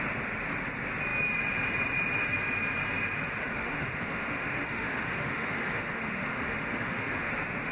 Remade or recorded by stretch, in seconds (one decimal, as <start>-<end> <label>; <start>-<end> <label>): 0.0-3.4 recorded; 3.4-7.3 remade; 7.3-7.7 recorded